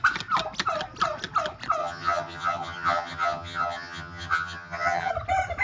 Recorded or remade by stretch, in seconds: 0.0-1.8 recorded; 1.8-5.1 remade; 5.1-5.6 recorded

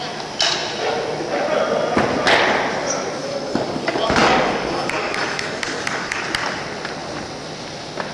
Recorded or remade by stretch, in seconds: 0.0-3.2 recorded; 3.2-6.2 remade; 6.2-8.1 recorded

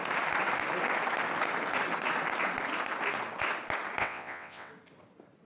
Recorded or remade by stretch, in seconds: 0.0-4.0 recorded; 4.0-4.7 remade; 4.7-5.4 recorded